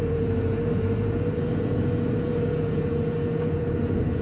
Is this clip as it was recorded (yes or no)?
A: no